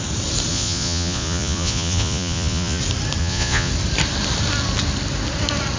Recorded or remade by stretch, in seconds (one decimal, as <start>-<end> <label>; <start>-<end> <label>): 0.0-0.5 recorded; 0.5-2.8 remade; 2.8-3.2 recorded; 3.2-3.7 remade; 3.7-5.8 recorded